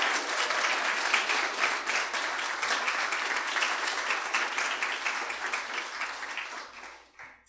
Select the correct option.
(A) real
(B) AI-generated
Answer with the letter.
A